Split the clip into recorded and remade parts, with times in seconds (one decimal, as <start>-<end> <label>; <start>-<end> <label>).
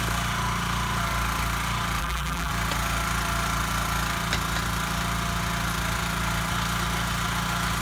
0.0-2.0 recorded; 2.0-2.5 remade; 2.5-7.8 recorded